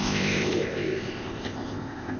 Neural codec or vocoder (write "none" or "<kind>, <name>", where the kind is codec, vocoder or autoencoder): codec, ZipCodec